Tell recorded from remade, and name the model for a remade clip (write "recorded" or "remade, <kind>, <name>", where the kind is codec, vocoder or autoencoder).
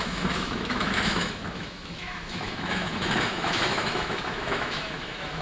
remade, autoencoder, DAC-VAE